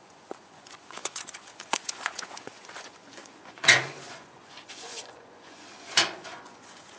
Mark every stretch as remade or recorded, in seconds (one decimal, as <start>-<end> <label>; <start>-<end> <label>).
0.0-7.0 remade